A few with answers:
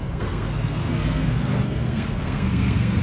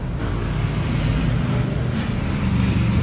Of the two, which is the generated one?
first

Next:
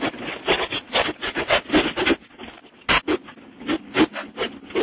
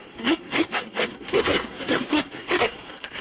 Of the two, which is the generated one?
second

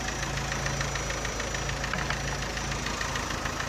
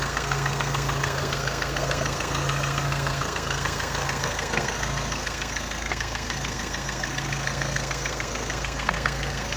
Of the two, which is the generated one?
second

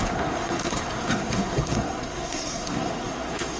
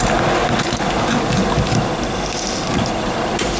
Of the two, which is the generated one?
first